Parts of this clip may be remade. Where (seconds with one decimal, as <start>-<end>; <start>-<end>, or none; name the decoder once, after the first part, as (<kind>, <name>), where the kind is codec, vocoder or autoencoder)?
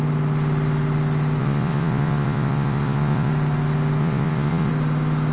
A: 1.4-3.3 (vocoder, Vocos); 4.0-4.7